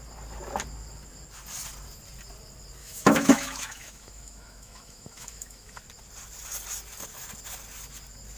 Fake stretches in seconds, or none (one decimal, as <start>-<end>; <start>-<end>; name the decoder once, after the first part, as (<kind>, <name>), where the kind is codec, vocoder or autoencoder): 2.8-5.8 (autoencoder, DAC-VAE)